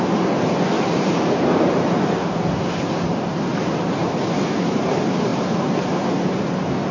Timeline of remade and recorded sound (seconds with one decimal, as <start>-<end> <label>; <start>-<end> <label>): 0.0-6.9 recorded